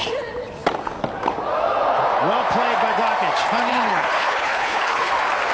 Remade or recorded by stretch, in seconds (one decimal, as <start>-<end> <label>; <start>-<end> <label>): 0.0-3.7 recorded; 3.7-5.1 remade; 5.1-5.5 recorded